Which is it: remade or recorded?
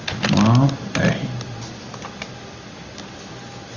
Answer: recorded